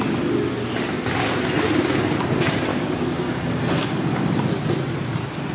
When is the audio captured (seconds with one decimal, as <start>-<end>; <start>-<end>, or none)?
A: 0.0-2.7; 3.5-5.5